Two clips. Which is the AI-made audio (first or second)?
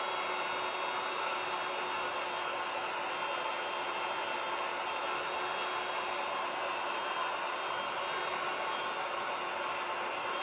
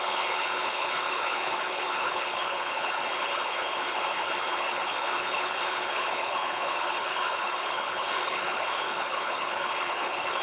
second